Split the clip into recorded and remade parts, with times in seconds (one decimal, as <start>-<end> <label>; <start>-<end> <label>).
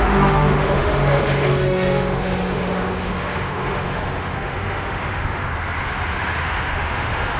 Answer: 0.0-5.5 remade; 5.5-6.4 recorded; 6.4-7.4 remade